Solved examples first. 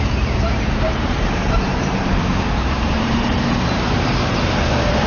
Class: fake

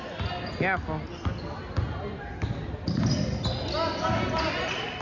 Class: real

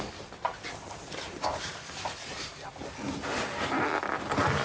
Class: real